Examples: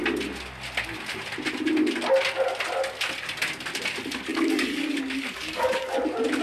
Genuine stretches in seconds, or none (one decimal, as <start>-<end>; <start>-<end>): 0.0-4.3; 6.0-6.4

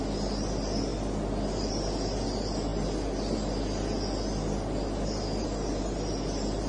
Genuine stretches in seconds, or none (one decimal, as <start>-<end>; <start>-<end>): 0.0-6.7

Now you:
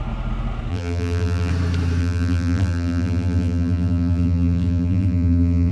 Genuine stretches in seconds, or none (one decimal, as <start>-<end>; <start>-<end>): 0.0-0.7; 1.5-2.0